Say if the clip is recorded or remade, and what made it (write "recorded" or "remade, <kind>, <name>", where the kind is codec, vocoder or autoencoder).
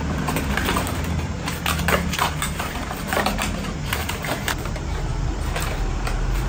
remade, vocoder, BigVGAN v2